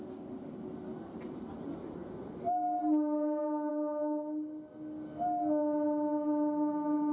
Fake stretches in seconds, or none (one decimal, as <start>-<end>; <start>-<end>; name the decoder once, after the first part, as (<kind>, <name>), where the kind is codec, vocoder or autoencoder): none